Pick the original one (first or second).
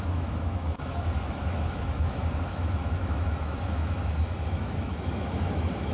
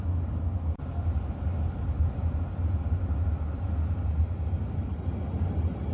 second